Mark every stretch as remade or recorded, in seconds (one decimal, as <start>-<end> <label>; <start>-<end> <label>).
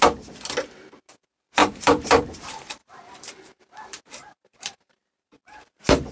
0.0-1.6 recorded; 1.6-5.3 remade; 5.3-6.1 recorded